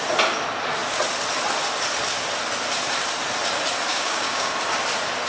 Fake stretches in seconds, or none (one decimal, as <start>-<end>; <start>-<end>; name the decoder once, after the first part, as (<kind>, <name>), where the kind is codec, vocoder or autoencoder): 3.9-4.5 (codec, DAC)